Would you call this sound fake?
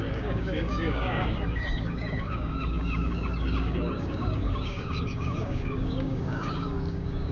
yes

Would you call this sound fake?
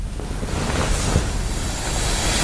no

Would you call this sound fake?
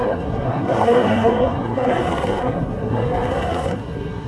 yes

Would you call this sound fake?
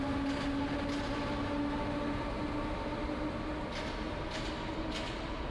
no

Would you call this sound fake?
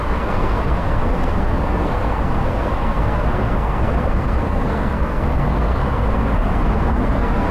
yes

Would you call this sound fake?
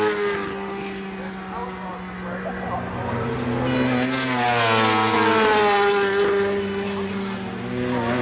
no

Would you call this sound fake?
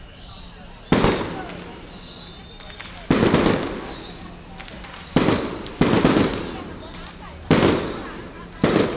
no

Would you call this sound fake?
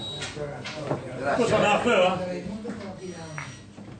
no